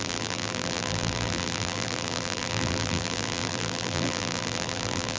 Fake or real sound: fake